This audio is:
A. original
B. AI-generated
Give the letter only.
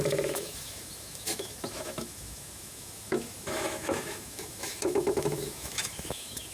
B